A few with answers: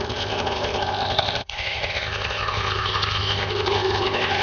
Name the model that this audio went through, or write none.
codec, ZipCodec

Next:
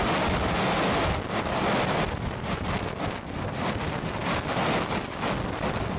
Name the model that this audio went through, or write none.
none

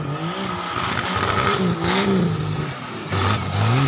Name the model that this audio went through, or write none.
none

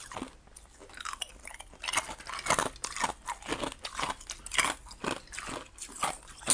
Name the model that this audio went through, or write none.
none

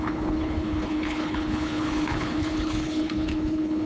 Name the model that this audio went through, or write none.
codec, HILCodec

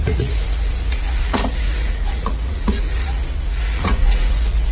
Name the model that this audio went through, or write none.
vocoder, Vocos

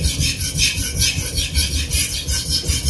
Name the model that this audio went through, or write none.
none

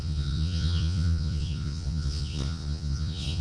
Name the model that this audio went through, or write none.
vocoder, Vocos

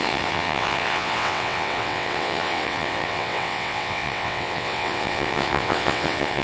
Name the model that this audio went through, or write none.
vocoder, WaveNeXt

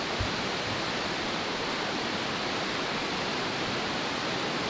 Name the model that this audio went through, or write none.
none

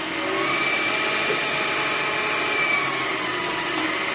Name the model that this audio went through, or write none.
none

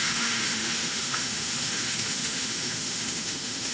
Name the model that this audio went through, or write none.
autoencoder, DAC-VAE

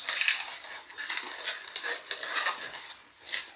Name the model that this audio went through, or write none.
none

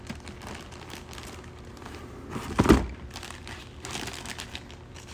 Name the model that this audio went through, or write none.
none